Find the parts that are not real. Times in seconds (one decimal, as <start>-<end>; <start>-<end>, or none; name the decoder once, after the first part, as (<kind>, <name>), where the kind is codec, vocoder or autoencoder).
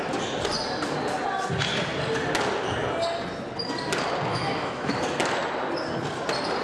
4.3-4.9 (autoencoder, DAC-VAE)